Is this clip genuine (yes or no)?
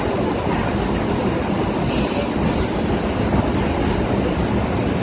yes